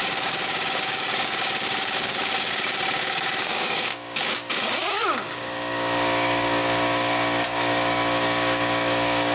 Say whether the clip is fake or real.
fake